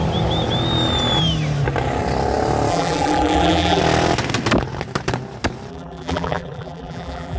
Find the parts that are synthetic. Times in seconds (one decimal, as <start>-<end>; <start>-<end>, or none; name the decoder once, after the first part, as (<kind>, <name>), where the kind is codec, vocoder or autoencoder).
2.7-3.8 (vocoder, BigVGAN v2); 5.7-7.4

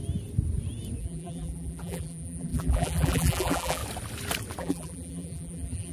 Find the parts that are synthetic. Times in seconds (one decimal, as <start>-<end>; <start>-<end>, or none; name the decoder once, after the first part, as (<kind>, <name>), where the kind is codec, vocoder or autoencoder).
1.0-3.8 (vocoder, BigVGAN v2); 4.6-5.9

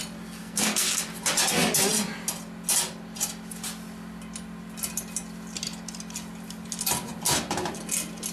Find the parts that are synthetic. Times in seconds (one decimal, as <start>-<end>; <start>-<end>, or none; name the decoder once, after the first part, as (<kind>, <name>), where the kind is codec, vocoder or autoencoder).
0.4-1.0 (codec, SNAC)

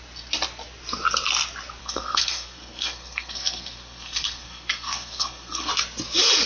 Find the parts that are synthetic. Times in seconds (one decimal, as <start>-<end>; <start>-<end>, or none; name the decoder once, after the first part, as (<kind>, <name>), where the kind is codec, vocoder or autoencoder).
1.8-5.7 (codec, SNAC)

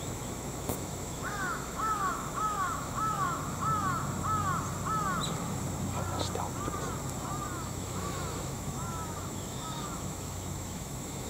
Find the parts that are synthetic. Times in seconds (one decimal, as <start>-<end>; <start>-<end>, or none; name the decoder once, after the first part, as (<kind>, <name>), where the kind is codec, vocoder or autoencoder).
0.0-3.4 (autoencoder, DAC-VAE); 7.5-11.3

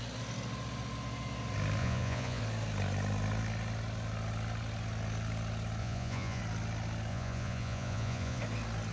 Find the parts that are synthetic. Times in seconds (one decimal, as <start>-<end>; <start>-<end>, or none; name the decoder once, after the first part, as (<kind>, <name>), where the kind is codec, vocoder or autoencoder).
1.8-2.4 (vocoder, Vocos); 5.8-6.4; 7.1-8.4